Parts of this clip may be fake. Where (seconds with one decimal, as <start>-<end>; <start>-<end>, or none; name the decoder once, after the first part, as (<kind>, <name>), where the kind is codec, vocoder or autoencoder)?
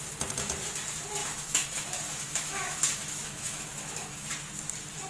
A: 1.2-4.3 (autoencoder, DAC-VAE)